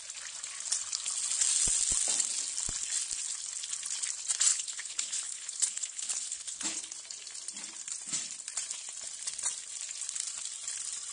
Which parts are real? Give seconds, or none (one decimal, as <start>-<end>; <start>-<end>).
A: 0.0-4.5; 6.8-11.1